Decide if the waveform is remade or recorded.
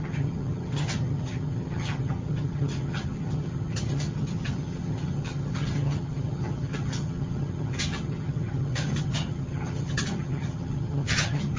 remade